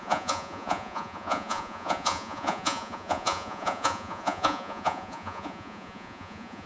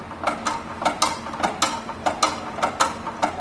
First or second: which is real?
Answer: second